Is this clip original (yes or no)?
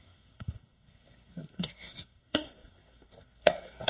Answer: no